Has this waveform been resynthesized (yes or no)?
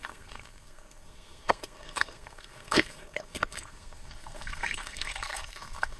yes